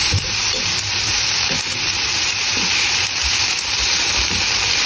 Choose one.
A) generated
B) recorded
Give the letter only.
A